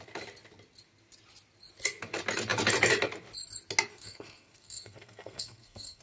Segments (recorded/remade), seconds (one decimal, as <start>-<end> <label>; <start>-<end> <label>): 0.0-3.9 recorded; 3.9-6.0 remade